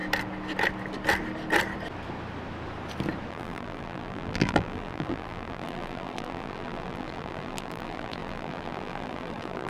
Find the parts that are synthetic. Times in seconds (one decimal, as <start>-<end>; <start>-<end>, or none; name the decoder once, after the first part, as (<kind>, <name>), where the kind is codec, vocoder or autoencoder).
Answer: 3.3-9.7 (vocoder, BigVGAN v2)